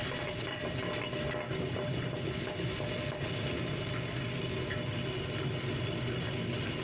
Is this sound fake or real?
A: real